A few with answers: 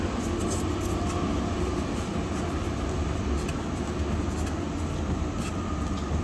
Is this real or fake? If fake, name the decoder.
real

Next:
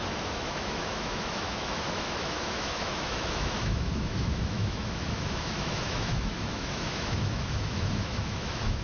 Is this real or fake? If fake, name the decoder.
fake, autoencoder, DAC-VAE